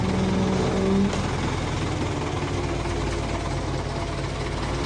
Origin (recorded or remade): recorded